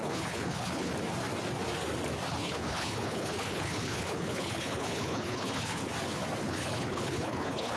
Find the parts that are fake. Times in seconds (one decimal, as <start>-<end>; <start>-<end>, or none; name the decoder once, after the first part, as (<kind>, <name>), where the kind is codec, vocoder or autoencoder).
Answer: 0.0-0.9 (codec, HILCodec); 2.3-5.8; 6.4-7.8